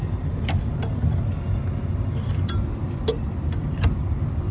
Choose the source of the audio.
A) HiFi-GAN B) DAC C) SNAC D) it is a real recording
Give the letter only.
D